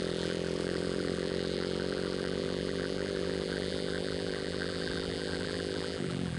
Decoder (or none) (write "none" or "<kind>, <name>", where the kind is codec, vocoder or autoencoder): vocoder, BigVGAN v2